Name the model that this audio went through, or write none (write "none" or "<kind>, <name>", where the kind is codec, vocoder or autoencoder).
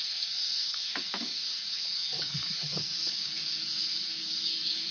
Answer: codec, SNAC